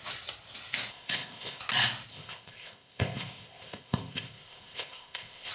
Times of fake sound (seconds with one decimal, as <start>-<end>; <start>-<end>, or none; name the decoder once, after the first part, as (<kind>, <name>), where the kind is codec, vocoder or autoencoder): 0.9-1.6 (codec, ZipCodec); 2.1-5.5